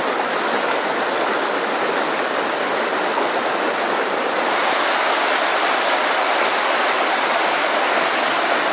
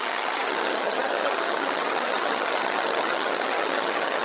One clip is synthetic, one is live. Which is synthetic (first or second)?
second